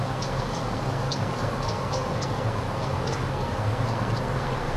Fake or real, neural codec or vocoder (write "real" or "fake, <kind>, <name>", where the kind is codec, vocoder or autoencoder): fake, codec, SNAC